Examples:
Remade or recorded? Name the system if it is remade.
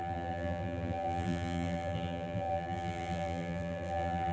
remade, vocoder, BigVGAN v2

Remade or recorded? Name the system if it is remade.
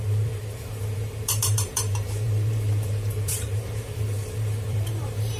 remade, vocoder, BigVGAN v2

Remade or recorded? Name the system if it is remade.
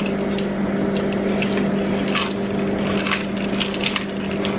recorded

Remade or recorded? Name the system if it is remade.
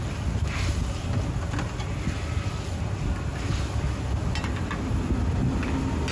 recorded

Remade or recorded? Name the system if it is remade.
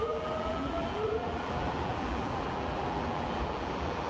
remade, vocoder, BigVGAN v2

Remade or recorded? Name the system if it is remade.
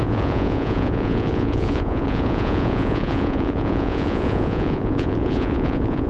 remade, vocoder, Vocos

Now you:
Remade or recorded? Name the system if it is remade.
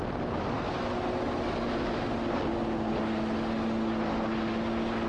recorded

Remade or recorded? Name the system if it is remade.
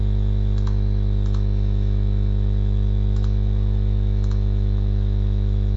remade, autoencoder, DAC-VAE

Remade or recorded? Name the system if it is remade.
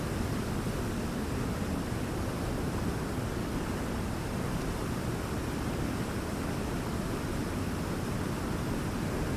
recorded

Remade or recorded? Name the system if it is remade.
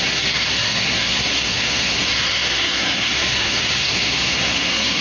remade, codec, SNAC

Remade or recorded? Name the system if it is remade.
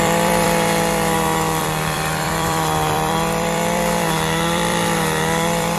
remade, vocoder, BigVGAN v2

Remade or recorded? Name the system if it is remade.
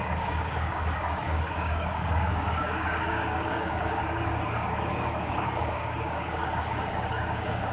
remade, codec, DAC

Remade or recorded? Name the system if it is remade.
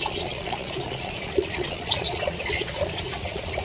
remade, vocoder, Vocos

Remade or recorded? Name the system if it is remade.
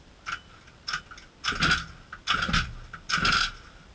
recorded